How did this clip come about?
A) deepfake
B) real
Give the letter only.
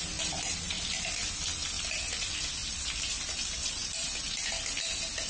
B